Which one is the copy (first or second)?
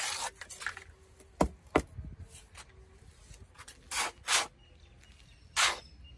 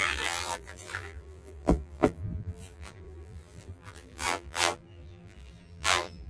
second